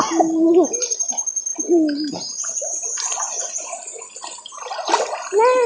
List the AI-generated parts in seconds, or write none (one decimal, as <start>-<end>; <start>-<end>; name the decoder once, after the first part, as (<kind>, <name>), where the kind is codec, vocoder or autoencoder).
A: none